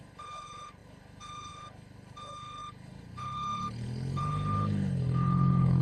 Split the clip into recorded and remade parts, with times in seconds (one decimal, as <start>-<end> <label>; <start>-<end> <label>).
0.0-5.8 remade